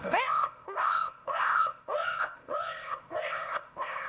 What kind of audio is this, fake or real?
fake